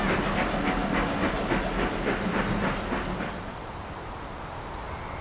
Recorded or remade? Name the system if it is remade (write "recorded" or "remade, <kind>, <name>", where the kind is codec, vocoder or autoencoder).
recorded